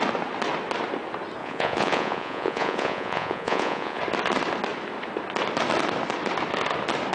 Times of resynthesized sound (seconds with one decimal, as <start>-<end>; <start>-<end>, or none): 1.4-4.0